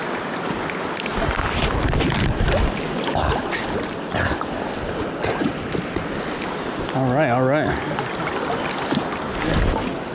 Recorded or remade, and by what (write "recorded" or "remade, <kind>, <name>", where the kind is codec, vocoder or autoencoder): recorded